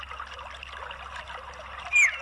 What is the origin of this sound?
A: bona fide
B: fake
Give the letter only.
A